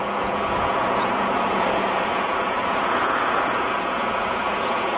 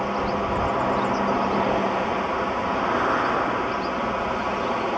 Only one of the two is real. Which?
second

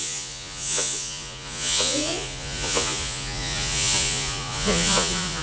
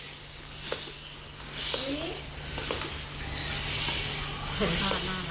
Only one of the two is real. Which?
second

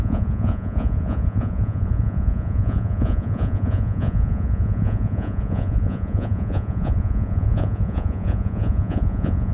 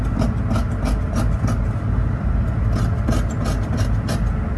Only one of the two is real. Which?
second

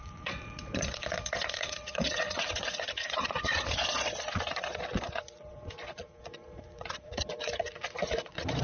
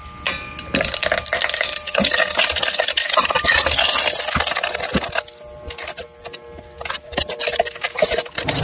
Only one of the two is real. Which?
second